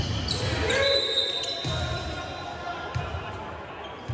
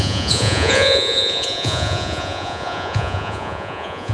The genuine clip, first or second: first